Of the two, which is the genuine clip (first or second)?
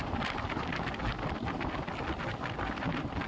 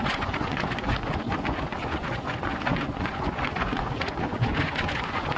first